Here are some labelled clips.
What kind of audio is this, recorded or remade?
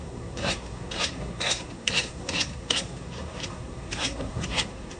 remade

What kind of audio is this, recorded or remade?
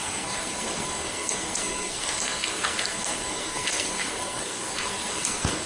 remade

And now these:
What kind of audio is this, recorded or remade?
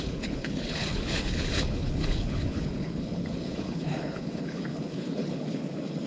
remade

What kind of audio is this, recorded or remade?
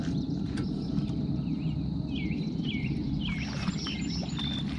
recorded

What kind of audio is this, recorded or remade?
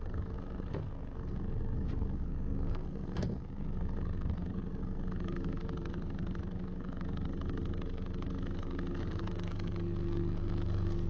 remade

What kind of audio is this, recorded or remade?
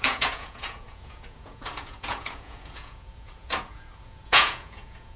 remade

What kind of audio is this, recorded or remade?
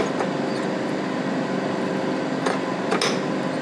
recorded